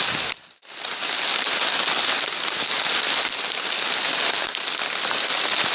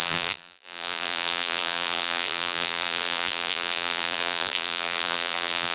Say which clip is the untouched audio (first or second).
first